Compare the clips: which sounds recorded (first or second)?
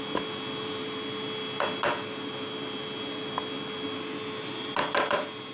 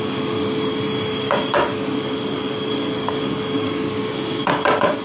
first